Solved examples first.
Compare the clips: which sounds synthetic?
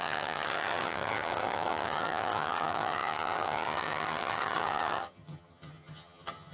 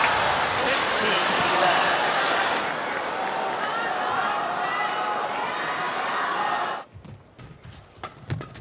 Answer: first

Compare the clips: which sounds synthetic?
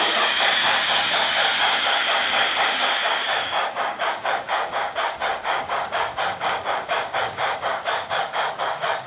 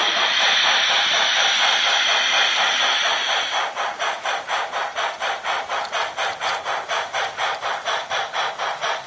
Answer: first